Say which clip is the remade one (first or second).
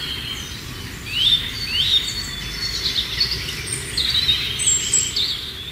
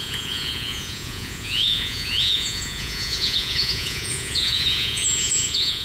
second